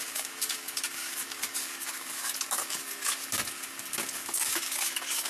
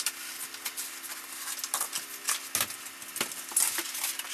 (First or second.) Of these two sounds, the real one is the second